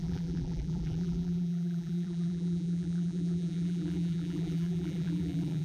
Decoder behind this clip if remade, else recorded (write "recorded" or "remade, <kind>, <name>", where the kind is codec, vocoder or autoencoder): remade, vocoder, BigVGAN v2